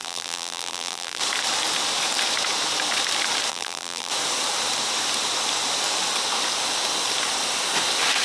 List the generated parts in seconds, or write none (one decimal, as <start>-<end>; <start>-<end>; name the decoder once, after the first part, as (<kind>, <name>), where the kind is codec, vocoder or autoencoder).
0.0-1.2 (vocoder, BigVGAN v2); 3.5-4.1